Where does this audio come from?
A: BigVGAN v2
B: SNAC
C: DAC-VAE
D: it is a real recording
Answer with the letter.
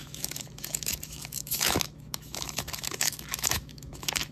C